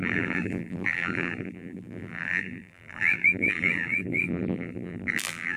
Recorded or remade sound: remade